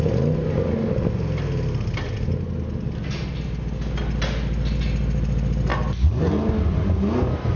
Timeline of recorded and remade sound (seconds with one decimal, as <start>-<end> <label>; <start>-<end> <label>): 0.0-7.6 recorded